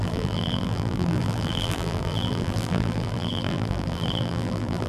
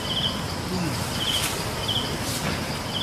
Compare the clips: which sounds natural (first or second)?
second